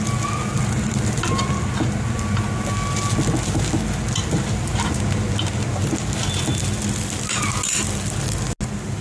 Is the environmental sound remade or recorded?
recorded